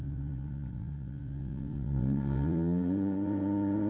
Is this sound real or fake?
fake